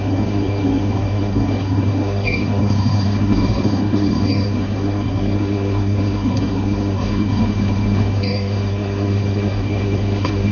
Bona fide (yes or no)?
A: no